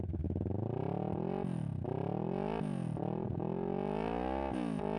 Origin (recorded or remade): recorded